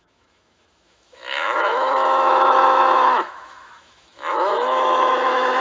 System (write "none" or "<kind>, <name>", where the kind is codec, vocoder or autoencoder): autoencoder, DAC-VAE